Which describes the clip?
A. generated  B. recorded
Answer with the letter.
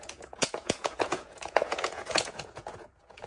A